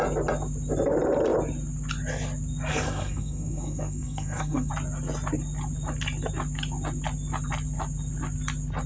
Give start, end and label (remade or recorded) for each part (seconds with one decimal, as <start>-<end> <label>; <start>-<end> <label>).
0.0-2.7 recorded; 2.7-4.7 remade; 4.7-8.9 recorded